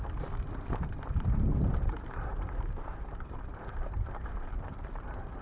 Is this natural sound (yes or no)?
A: no